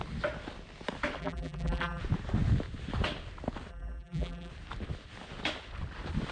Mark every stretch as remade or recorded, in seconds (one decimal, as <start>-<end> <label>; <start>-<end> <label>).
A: 0.0-1.2 recorded; 1.2-2.0 remade; 2.0-3.7 recorded; 3.7-4.5 remade; 4.5-6.3 recorded